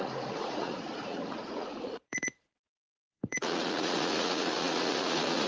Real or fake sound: fake